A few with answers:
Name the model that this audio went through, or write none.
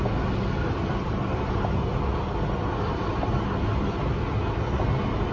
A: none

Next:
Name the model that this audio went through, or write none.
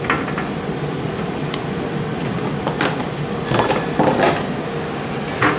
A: none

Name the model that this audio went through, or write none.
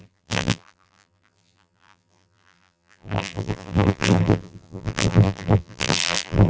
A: vocoder, BigVGAN v2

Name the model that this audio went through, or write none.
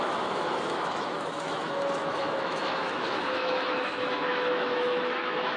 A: autoencoder, DAC-VAE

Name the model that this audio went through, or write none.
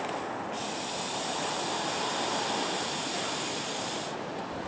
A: none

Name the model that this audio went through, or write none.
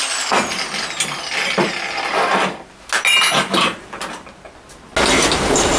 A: none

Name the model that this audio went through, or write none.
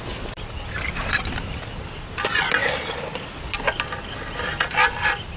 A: none